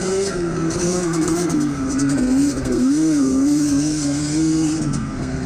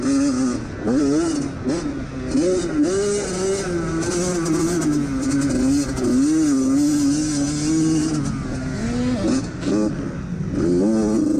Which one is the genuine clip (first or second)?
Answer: second